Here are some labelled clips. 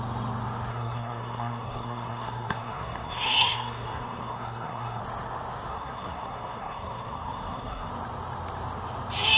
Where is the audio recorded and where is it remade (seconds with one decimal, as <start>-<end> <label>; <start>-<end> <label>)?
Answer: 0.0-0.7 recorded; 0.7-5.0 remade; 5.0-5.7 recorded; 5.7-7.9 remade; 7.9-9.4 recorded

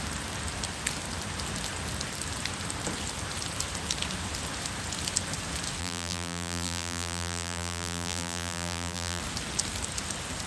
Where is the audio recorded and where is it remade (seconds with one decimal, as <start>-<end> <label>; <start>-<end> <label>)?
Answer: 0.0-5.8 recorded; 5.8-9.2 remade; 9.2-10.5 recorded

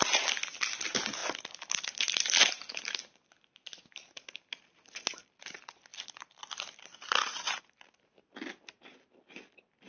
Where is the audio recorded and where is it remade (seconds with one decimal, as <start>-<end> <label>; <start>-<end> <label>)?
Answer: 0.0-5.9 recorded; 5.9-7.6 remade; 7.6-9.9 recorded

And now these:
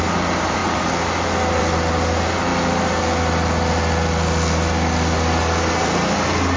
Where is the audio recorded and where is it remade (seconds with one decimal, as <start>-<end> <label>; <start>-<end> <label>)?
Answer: 0.0-6.6 recorded

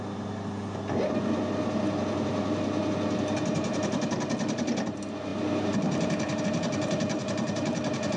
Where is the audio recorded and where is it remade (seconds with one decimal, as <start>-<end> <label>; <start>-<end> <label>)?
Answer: 0.0-8.2 recorded

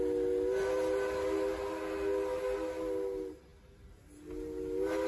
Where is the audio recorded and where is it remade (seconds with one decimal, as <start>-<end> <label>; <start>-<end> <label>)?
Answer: 0.0-5.1 recorded